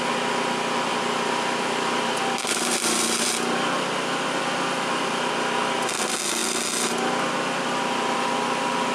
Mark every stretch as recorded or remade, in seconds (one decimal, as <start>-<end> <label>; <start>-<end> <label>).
0.0-0.9 recorded; 0.9-5.3 remade; 5.3-8.9 recorded

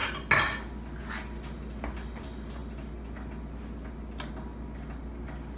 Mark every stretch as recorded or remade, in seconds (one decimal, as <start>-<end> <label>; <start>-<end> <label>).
0.0-5.6 recorded

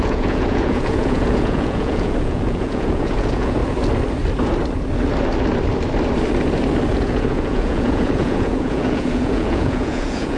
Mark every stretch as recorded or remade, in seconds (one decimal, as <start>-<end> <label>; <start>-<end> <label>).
0.0-3.6 remade; 3.6-6.9 recorded; 6.9-10.4 remade

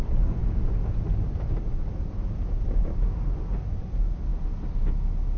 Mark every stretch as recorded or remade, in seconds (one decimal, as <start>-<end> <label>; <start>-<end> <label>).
0.0-5.4 recorded

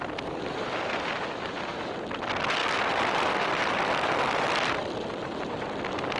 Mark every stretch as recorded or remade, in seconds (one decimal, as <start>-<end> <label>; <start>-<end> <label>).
0.0-6.2 recorded

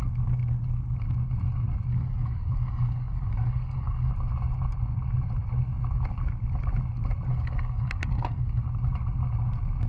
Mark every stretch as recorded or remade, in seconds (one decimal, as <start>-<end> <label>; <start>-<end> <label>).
0.0-1.9 recorded; 1.9-4.1 remade; 4.1-7.3 recorded; 7.3-8.6 remade; 8.6-9.9 recorded